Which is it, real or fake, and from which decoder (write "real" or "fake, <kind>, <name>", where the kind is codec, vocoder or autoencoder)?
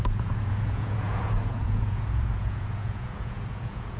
fake, vocoder, Vocos